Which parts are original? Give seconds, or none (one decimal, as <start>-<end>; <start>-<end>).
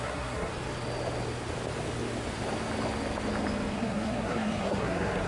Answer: 0.5-3.7